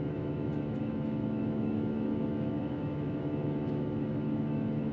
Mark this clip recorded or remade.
remade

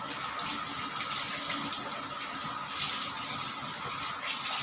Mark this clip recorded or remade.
recorded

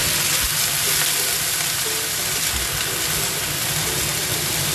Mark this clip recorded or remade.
remade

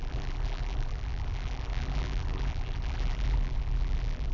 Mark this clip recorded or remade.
remade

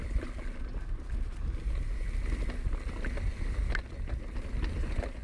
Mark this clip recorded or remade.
recorded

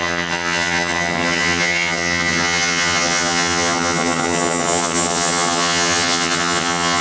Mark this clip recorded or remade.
remade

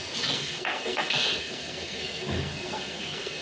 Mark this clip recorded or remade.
remade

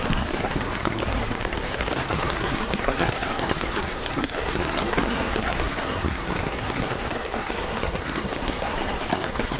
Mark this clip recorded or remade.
remade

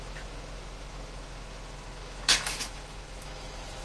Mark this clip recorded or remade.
remade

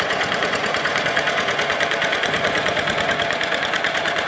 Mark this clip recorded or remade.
remade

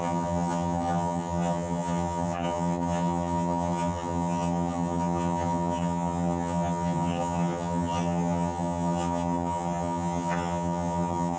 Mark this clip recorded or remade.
remade